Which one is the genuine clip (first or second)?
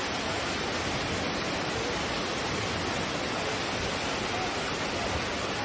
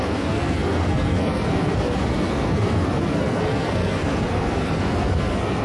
first